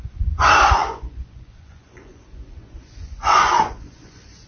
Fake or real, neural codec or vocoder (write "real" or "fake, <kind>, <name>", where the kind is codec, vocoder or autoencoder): fake, vocoder, Vocos